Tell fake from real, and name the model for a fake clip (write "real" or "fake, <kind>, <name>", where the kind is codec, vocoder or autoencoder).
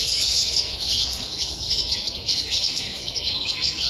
fake, codec, SNAC